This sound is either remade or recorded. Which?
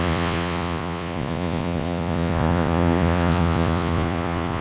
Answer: remade